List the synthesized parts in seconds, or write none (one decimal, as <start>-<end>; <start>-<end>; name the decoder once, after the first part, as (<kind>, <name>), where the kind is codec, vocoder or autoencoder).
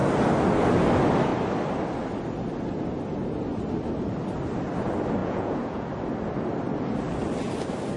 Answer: 5.2-5.9 (vocoder, Vocos)